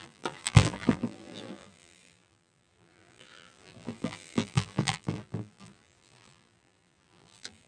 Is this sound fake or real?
fake